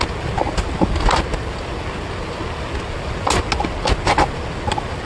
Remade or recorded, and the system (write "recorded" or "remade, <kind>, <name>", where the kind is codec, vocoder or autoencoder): recorded